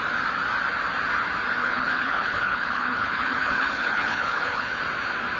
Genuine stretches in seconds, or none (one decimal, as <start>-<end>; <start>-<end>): 0.0-1.6; 4.8-5.4